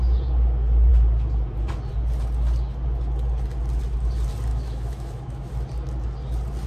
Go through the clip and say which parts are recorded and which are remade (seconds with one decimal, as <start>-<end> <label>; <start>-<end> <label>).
0.0-4.5 recorded; 4.5-5.5 remade; 5.5-6.7 recorded